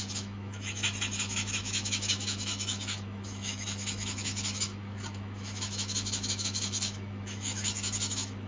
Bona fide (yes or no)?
no